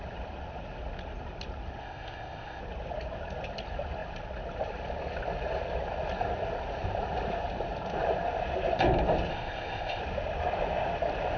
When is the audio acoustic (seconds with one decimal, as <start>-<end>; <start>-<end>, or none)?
0.0-1.8; 2.6-9.3; 10.0-11.4